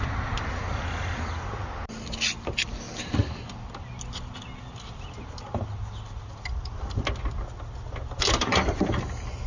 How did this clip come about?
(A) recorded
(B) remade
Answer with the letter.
A